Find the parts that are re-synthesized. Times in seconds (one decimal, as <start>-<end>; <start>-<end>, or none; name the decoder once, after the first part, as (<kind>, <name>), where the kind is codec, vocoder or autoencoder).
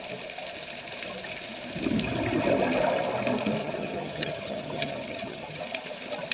3.6-5.6 (vocoder, HiFi-GAN)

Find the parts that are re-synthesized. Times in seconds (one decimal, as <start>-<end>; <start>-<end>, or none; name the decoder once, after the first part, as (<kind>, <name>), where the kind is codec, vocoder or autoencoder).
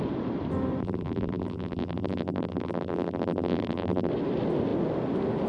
0.8-4.1 (vocoder, BigVGAN v2)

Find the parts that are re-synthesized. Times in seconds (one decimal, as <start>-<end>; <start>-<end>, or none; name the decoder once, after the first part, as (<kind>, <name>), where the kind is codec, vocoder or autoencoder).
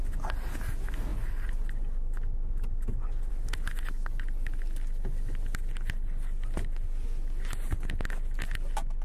none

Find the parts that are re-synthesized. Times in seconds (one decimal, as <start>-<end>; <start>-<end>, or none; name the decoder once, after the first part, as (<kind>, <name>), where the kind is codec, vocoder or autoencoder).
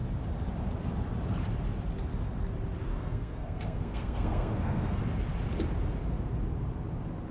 2.9-5.0 (codec, SNAC)